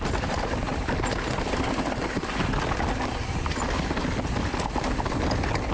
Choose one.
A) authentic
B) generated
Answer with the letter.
A